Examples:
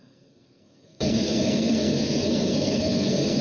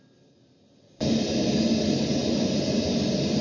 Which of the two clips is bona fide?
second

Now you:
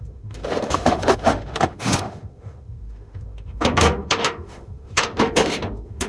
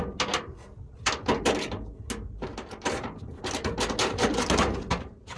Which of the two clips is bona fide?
second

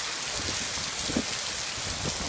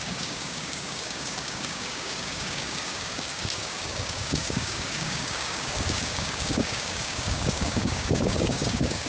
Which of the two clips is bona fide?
first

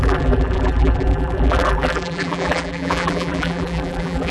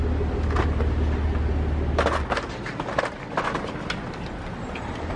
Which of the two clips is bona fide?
second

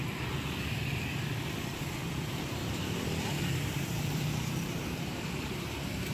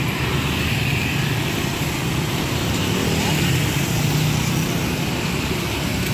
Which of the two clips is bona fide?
second